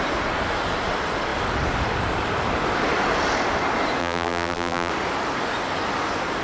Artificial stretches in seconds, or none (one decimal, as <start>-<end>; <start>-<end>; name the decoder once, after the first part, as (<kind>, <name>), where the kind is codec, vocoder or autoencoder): 4.0-4.9 (vocoder, BigVGAN v2)